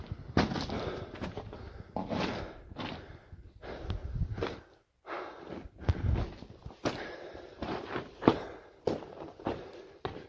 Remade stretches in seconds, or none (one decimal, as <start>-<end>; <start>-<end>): 4.0-4.6; 6.6-9.7